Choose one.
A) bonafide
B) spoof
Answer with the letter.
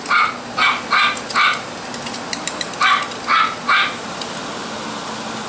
A